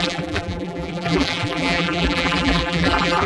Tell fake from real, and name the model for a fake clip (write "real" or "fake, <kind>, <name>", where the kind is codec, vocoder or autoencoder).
fake, vocoder, BigVGAN v2